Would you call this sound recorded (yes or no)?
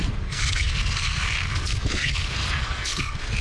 no